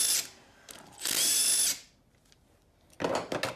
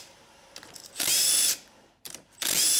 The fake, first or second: second